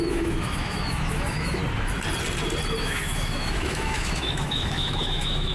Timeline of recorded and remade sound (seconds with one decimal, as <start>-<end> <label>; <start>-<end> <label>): 0.0-1.6 remade; 1.6-2.8 recorded; 2.8-5.5 remade